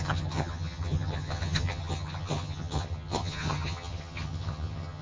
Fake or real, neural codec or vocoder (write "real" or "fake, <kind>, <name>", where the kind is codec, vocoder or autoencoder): fake, vocoder, HiFi-GAN